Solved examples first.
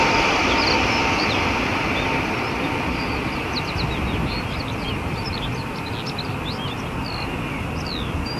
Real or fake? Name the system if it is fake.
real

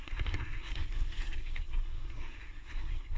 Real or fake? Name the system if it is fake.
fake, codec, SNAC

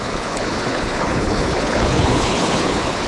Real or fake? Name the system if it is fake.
fake, codec, HILCodec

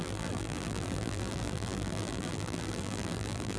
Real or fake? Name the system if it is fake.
fake, vocoder, BigVGAN v2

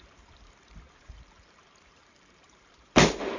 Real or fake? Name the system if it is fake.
fake, vocoder, BigVGAN v2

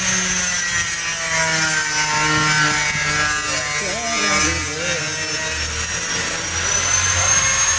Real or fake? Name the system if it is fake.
real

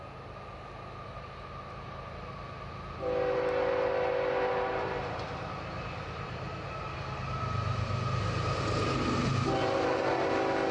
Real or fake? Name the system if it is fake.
real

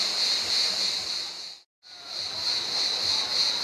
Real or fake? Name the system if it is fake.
real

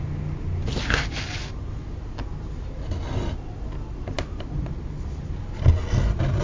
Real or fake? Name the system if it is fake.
real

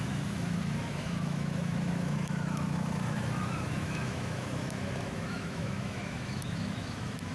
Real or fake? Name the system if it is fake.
fake, autoencoder, DAC-VAE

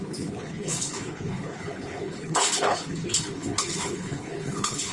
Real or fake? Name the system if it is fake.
fake, codec, HILCodec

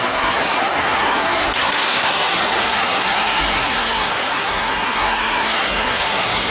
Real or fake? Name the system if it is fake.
fake, codec, SNAC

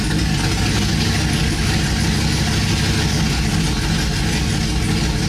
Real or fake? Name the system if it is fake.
real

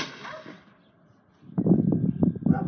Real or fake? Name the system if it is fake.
real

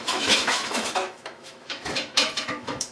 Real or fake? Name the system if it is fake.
fake, autoencoder, DAC-VAE